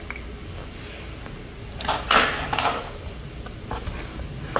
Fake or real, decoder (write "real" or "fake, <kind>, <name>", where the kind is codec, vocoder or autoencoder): real